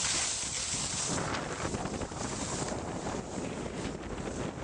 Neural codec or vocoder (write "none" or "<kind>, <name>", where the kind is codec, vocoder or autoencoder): none